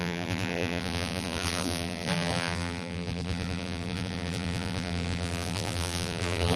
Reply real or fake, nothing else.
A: fake